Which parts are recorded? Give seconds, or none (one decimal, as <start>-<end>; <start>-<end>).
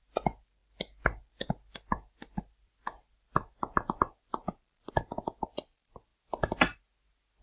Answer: 0.0-7.4